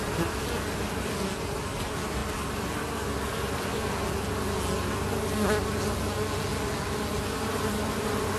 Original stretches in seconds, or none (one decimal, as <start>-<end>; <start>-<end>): 0.0-8.4